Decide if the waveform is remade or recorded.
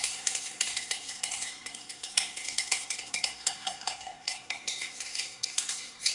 remade